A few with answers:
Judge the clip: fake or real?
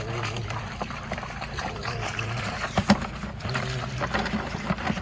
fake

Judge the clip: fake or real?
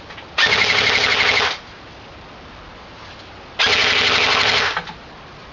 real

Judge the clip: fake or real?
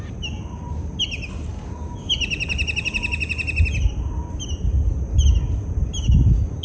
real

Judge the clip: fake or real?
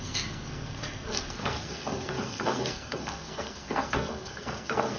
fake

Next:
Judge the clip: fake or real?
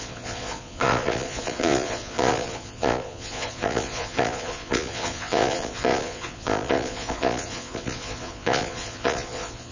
fake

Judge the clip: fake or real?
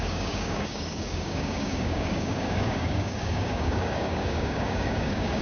fake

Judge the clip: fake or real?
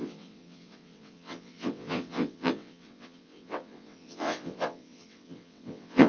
fake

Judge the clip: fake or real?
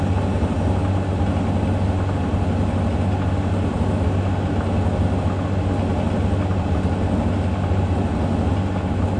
real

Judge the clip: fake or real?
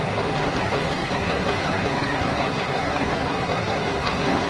fake